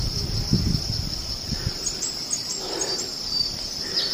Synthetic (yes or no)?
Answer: yes